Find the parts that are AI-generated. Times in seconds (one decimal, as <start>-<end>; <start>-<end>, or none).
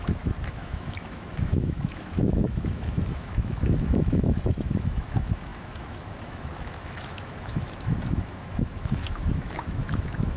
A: 0.0-10.4